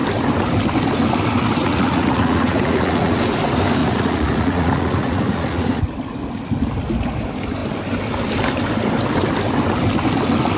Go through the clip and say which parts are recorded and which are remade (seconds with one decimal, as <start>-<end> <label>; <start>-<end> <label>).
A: 0.0-1.6 recorded; 1.6-3.2 remade; 3.2-3.8 recorded; 3.8-5.8 remade; 5.8-10.6 recorded